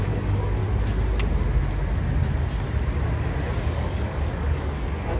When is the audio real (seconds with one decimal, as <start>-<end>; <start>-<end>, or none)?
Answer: 0.6-3.7